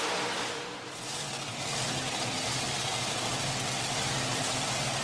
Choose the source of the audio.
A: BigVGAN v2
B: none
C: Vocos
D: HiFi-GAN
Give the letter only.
B